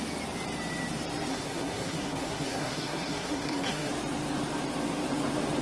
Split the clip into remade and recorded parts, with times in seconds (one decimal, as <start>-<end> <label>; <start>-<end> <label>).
0.0-1.3 recorded; 1.3-3.9 remade; 3.9-5.6 recorded